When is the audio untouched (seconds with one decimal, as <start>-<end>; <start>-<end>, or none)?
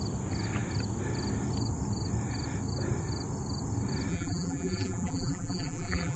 0.0-4.1